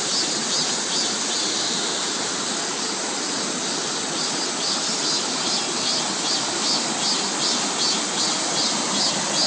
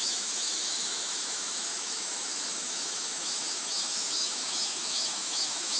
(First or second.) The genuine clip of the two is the first